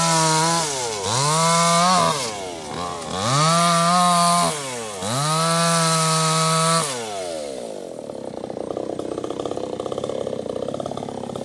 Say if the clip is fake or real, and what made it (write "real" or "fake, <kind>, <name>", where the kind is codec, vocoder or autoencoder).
real